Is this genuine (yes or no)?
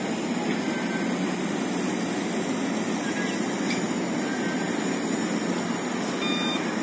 yes